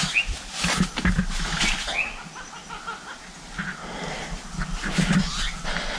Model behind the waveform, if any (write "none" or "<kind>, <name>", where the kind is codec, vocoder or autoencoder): none